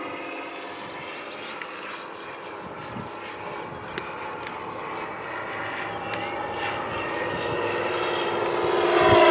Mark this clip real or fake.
real